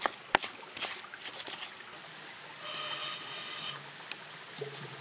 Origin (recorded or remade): recorded